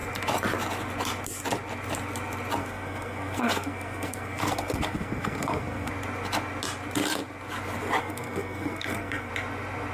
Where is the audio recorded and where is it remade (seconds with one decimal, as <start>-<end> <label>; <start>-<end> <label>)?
0.0-2.6 recorded; 2.6-5.9 remade; 5.9-8.0 recorded; 8.0-9.3 remade; 9.3-9.9 recorded